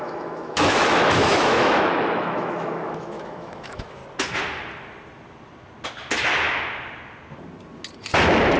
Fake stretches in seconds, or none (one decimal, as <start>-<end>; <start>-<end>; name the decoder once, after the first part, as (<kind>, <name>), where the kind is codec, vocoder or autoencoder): 0.0-4.0 (autoencoder, DAC-VAE)